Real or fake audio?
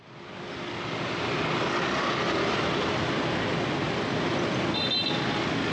real